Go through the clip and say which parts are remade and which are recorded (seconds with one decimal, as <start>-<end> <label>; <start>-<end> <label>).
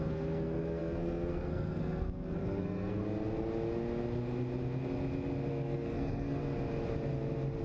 0.0-3.0 remade; 3.0-5.5 recorded; 5.5-6.4 remade; 6.4-7.6 recorded